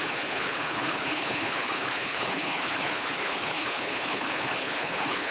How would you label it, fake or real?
fake